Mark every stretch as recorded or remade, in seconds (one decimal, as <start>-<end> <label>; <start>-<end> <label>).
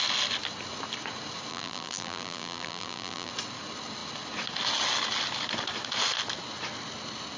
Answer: 0.0-1.5 recorded; 1.5-3.3 remade; 3.3-7.4 recorded